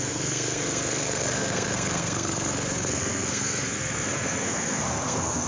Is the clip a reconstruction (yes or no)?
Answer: yes